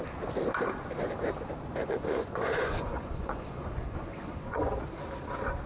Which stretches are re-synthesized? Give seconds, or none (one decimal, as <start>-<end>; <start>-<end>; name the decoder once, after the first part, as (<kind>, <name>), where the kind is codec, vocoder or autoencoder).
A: 1.8-4.8 (vocoder, Vocos)